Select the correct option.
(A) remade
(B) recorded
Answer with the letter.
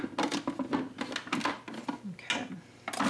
B